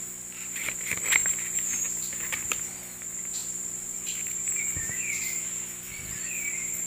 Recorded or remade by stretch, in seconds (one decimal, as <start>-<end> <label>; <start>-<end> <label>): 0.0-1.2 recorded; 1.2-2.6 remade; 2.6-3.4 recorded; 3.4-4.5 remade; 4.5-5.2 recorded; 5.2-6.9 remade